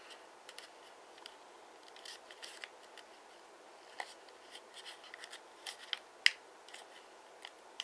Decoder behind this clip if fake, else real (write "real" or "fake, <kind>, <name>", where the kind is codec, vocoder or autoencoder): real